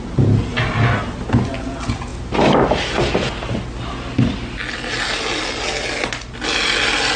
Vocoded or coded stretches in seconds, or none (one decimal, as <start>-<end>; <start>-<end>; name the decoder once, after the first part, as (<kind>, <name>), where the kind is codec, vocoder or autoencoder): none